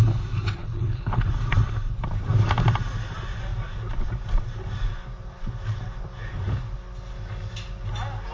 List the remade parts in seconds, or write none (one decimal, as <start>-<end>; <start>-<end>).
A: 0.6-1.3